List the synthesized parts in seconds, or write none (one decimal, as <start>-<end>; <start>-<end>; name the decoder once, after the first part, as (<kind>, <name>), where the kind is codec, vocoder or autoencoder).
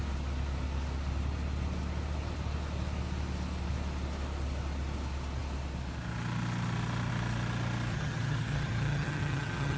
7.9-9.8 (vocoder, HiFi-GAN)